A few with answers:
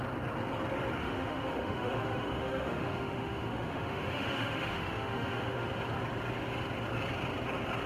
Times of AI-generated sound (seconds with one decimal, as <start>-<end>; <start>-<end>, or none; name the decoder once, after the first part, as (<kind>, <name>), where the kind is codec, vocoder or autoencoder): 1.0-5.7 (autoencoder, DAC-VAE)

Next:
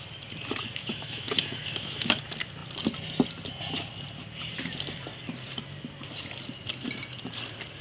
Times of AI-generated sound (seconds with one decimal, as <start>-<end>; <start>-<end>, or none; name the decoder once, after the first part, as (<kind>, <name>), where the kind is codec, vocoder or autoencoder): 0.8-2.2 (autoencoder, DAC-VAE)

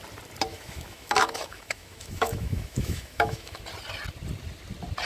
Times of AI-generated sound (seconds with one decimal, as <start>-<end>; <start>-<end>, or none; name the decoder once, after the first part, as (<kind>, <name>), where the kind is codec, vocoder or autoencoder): 0.5-3.6 (autoencoder, DAC-VAE)

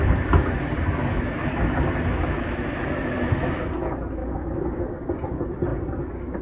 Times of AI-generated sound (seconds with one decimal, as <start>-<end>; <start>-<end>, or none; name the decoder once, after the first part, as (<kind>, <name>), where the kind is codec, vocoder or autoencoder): 1.1-3.7 (autoencoder, DAC-VAE); 4.2-4.8